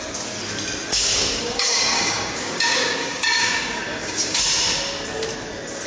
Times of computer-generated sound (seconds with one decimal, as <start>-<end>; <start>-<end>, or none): 0.9-4.4